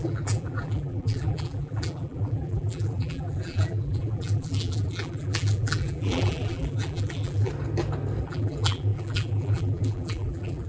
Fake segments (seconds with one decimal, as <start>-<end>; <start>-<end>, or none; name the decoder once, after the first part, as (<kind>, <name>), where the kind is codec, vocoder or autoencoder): 0.0-7.5 (vocoder, BigVGAN v2); 8.2-10.7